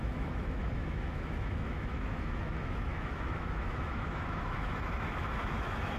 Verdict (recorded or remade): remade